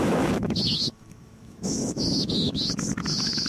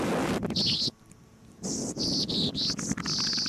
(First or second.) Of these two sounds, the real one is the second